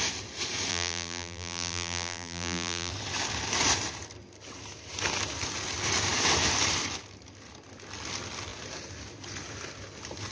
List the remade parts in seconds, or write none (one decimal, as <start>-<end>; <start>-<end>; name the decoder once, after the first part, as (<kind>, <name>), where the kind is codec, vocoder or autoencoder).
0.7-2.9 (vocoder, BigVGAN v2)